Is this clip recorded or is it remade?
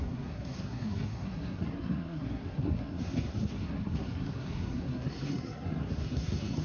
remade